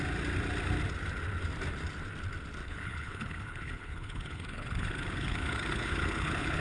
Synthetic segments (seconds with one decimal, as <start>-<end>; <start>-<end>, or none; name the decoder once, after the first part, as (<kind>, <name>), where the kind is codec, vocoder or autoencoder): 2.6-6.6 (codec, HILCodec)